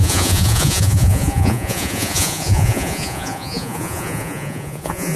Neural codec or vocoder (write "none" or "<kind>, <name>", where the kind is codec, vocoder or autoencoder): vocoder, Vocos